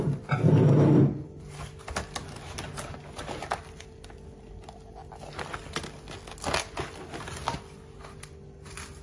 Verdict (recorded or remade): recorded